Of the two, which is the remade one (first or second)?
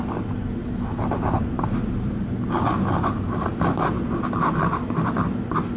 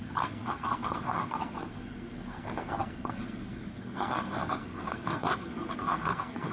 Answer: second